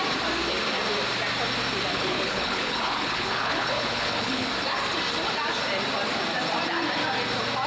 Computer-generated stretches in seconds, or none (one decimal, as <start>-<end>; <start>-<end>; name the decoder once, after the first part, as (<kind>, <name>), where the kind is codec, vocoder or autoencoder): 1.9-4.5 (codec, HILCodec)